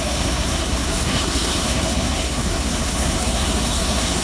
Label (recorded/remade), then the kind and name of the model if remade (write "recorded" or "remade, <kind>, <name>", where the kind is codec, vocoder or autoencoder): remade, codec, SNAC